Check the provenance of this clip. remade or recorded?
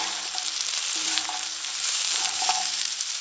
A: remade